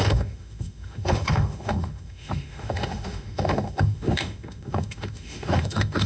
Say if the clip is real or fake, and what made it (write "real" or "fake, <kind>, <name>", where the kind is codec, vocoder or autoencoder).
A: fake, autoencoder, DAC-VAE